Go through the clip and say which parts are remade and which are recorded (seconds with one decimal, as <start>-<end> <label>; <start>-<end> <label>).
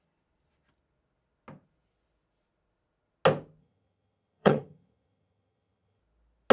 0.0-3.6 recorded; 3.6-6.0 remade; 6.0-6.5 recorded